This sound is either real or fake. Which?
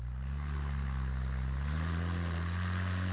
real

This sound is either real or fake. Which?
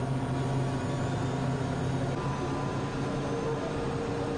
real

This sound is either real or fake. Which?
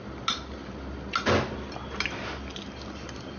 real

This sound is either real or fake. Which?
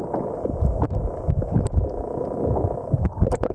real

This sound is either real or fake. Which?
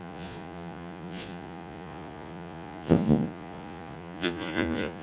fake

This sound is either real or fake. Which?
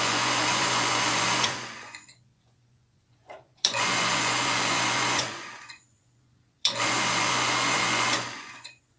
fake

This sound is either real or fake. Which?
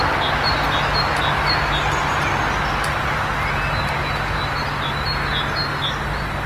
real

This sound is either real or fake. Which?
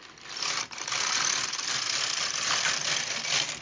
real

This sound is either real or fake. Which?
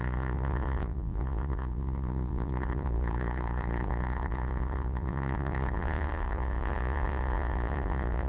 fake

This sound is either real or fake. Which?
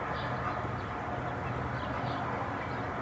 real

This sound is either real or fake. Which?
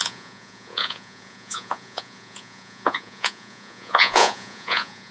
fake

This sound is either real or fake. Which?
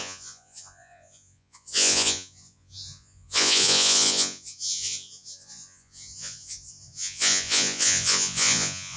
fake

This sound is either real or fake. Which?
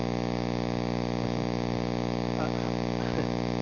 real